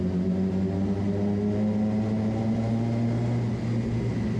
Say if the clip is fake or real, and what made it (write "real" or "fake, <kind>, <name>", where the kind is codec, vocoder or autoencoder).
real